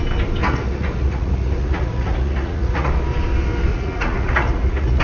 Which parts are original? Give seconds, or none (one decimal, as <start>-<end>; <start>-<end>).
0.0-0.4; 2.9-3.7